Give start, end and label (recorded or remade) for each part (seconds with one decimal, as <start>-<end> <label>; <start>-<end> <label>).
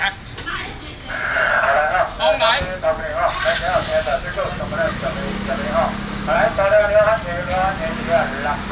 0.0-8.7 recorded